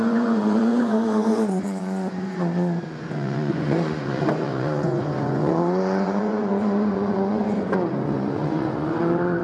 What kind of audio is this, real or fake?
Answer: fake